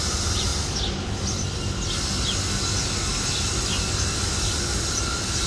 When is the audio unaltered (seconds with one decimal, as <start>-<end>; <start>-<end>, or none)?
0.0-5.5